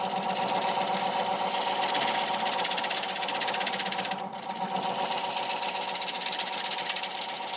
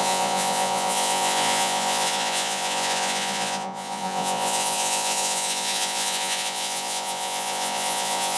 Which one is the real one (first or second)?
first